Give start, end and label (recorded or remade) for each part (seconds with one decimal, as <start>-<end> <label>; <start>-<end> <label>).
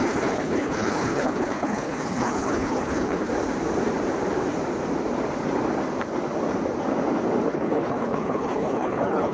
0.0-3.3 remade; 3.3-7.5 recorded; 7.5-9.3 remade